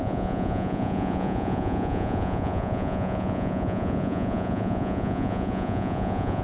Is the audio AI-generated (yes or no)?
yes